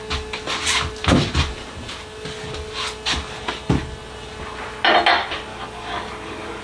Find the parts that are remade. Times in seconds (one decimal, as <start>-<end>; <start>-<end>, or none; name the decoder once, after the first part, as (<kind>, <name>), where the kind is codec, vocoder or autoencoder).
5.5-6.6 (codec, DAC)